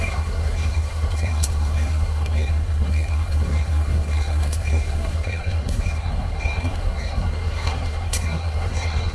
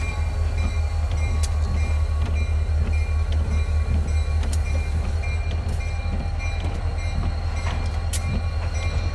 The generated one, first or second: first